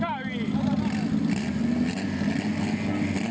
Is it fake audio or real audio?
real